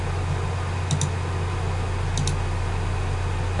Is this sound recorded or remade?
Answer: recorded